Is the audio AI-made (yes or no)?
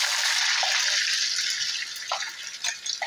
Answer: yes